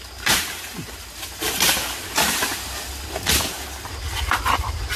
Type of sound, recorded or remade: recorded